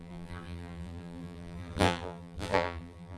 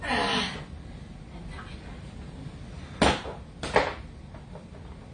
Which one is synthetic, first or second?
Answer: first